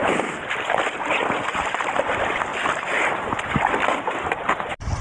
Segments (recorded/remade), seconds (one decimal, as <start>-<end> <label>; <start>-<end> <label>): 0.0-5.0 recorded

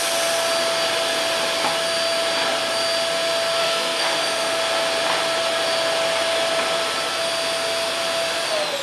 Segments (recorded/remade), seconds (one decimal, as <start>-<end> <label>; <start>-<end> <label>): 0.0-3.6 recorded; 3.6-4.6 remade; 4.6-8.8 recorded